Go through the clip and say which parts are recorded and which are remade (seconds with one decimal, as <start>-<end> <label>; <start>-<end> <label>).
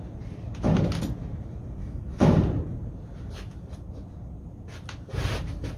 0.0-1.8 recorded; 1.8-2.3 remade; 2.3-5.8 recorded